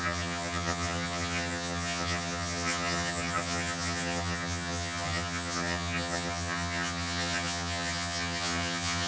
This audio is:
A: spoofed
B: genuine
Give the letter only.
A